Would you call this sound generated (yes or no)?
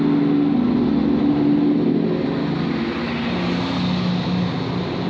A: no